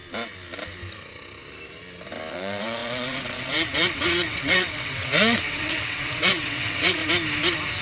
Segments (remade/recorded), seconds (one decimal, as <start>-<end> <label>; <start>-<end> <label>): 0.0-2.3 recorded; 2.3-7.0 remade; 7.0-7.8 recorded